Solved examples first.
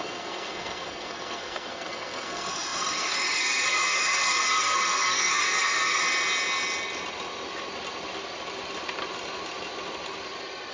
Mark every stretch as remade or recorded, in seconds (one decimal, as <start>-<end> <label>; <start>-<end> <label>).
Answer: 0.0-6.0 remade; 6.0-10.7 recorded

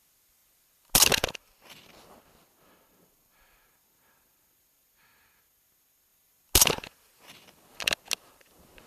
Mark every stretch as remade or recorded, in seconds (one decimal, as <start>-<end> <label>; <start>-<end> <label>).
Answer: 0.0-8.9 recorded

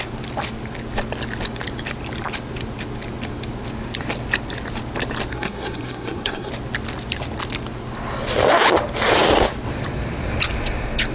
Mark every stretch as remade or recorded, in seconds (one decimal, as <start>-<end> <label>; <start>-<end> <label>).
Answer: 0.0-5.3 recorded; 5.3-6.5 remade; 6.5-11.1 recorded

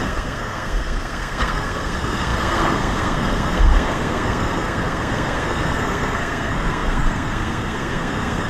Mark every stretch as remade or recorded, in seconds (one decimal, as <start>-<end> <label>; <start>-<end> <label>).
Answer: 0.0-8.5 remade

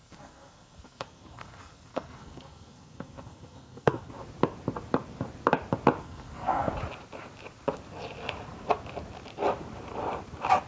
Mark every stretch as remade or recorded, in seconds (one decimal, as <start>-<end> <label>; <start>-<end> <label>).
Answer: 0.0-4.1 remade; 4.1-6.0 recorded; 6.0-6.7 remade; 6.7-10.7 recorded